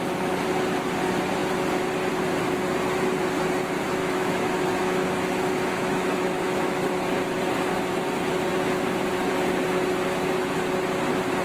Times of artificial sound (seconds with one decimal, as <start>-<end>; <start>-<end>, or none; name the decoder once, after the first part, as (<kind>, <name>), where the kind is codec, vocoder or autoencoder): 4.0-7.0 (autoencoder, DAC-VAE)